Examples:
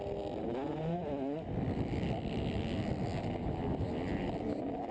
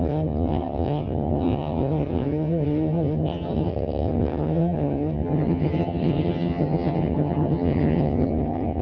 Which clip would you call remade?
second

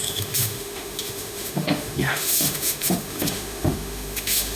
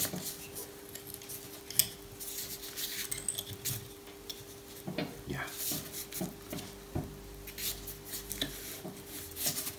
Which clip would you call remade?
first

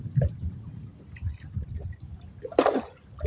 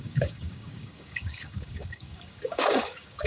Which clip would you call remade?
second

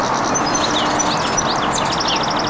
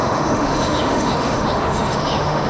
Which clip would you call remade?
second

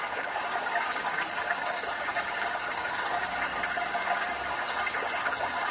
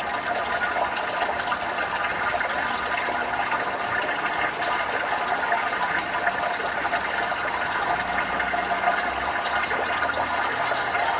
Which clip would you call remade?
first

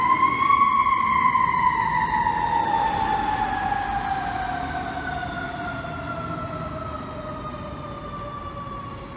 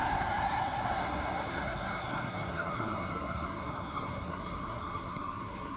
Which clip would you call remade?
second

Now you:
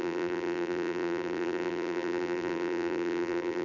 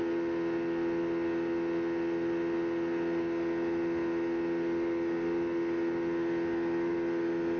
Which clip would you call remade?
first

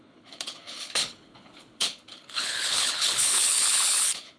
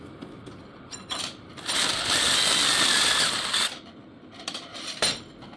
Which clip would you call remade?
first